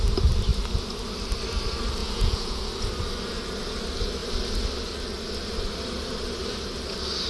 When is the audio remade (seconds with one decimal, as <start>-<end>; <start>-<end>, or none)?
2.0-2.6